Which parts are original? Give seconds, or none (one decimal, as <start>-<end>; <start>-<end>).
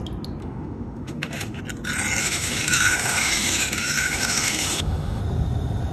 0.0-0.4; 1.6-2.2; 5.2-5.9